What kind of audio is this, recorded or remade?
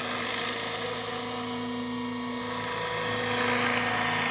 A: recorded